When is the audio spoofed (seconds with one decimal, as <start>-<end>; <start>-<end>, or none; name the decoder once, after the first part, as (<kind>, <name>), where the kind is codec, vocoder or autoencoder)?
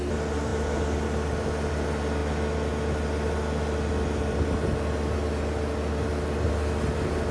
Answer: none